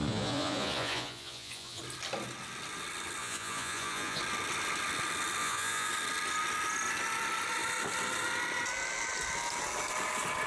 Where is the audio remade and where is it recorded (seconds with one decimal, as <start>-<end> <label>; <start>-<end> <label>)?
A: 0.0-1.8 remade; 1.8-3.2 recorded; 3.2-4.2 remade; 4.2-5.4 recorded; 5.4-5.9 remade; 5.9-10.5 recorded